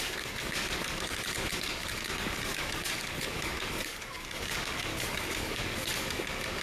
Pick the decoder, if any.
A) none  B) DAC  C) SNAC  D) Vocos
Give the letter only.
B